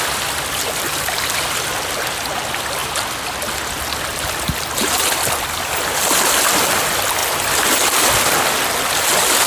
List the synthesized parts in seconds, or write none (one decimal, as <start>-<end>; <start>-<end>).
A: none